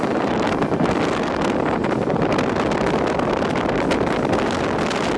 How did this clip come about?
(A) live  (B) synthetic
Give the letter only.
A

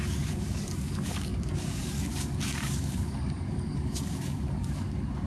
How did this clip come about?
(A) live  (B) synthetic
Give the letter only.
B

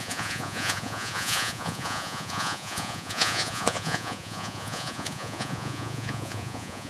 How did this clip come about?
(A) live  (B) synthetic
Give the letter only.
B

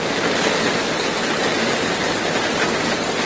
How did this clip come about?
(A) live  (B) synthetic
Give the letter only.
A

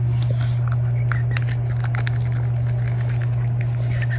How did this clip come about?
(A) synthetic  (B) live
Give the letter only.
B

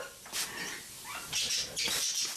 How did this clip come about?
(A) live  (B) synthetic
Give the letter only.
A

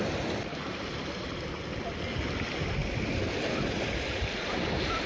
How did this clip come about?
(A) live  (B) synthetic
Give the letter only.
A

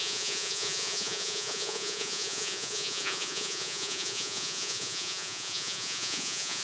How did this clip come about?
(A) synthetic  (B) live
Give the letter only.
A